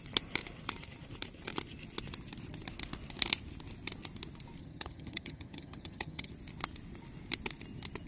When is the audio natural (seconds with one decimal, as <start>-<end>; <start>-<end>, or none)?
0.0-4.6; 6.3-8.1